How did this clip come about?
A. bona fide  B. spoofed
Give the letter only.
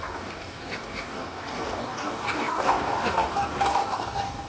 B